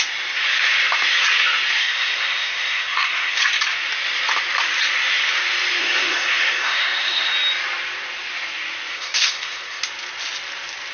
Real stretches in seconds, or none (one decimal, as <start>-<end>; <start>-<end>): 0.0-1.8; 3.4-5.8; 7.3-8.9; 9.8-10.9